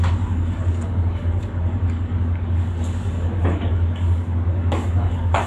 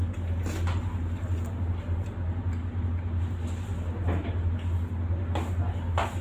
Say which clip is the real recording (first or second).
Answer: second